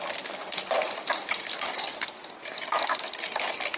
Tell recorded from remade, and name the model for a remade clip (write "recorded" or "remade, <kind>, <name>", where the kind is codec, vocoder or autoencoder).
recorded